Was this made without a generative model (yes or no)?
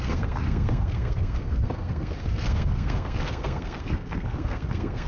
no